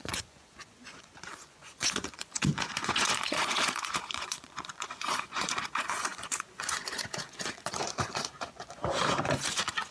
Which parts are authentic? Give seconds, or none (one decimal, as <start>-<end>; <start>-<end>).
none